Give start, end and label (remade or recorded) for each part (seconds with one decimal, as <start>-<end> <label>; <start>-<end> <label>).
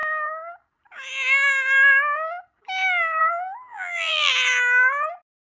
0.0-3.7 recorded; 3.7-4.3 remade; 4.3-5.4 recorded